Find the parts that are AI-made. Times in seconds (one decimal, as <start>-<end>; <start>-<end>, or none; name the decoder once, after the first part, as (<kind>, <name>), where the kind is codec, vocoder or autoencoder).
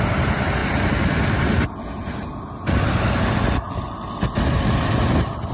none